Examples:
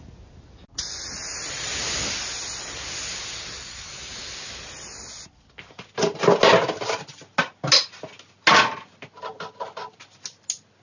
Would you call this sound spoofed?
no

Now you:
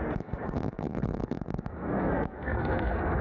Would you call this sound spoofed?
yes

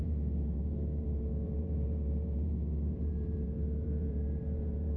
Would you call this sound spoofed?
yes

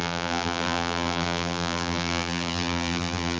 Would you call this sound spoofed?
yes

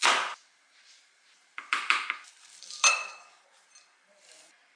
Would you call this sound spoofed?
no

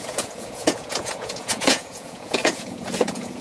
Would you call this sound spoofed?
yes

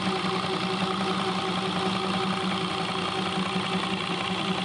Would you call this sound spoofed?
no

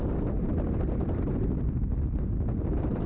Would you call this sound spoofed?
no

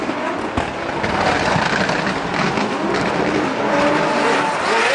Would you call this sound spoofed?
no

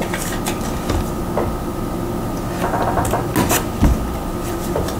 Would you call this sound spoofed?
no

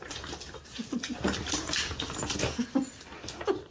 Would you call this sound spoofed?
yes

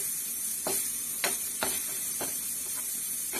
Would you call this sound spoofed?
no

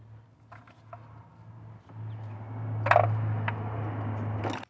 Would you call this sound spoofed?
no